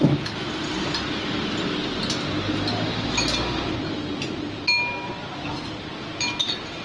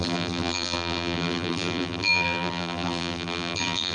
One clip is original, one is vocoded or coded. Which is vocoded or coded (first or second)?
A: second